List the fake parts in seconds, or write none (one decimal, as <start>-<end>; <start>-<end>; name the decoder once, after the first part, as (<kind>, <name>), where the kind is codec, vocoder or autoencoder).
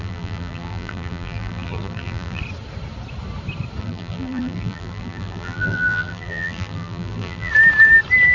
0.0-2.4 (vocoder, BigVGAN v2); 3.8-7.5